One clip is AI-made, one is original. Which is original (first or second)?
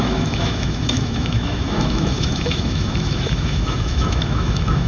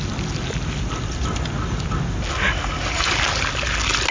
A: second